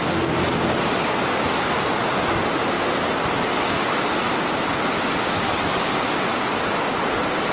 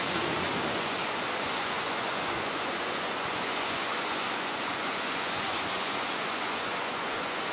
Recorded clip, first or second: first